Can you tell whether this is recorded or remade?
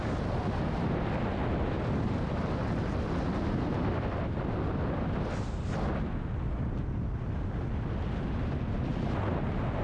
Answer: recorded